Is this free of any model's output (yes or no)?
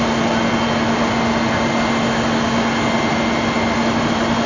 yes